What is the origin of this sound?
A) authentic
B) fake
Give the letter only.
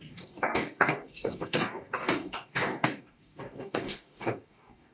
B